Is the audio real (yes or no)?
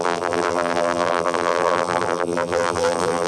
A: no